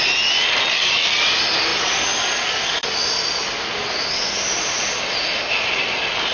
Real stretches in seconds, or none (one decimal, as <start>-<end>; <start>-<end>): 0.0-6.3